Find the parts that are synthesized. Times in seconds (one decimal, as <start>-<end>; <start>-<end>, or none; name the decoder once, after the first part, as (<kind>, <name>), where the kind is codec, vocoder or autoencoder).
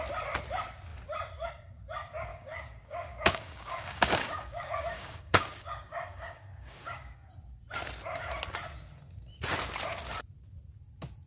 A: 2.3-7.3 (codec, DAC)